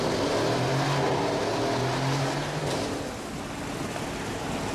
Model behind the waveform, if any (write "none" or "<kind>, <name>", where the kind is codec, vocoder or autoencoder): none